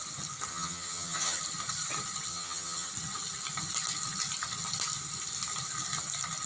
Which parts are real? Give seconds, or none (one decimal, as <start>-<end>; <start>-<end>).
0.0-0.5; 1.4-2.3; 2.9-6.5